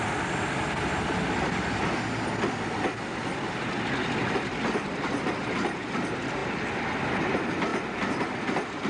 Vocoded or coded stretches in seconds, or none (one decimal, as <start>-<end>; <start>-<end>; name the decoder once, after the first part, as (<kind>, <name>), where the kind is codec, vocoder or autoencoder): none